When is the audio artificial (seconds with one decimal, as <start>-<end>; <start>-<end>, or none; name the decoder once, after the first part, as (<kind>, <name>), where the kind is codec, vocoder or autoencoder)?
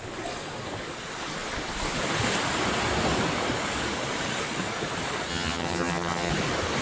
5.3-6.3 (vocoder, HiFi-GAN)